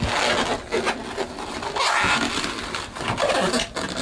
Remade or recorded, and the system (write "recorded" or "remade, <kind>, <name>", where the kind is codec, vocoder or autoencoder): recorded